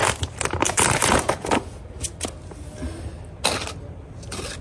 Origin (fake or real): real